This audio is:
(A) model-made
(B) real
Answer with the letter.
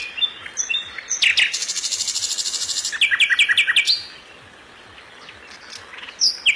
B